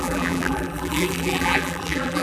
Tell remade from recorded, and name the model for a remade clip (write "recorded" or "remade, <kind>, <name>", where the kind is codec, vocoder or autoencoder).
remade, vocoder, BigVGAN v2